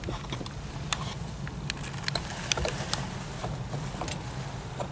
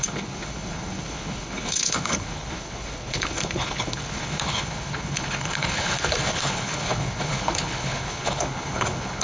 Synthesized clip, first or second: second